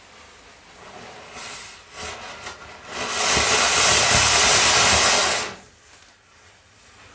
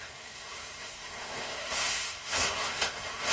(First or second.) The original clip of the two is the first